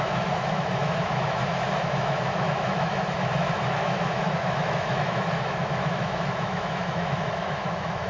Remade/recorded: remade